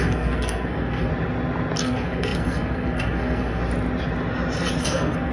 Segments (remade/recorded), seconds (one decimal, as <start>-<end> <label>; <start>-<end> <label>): 0.0-1.1 remade; 1.1-1.8 recorded; 1.8-3.6 remade; 3.6-4.8 recorded; 4.8-5.3 remade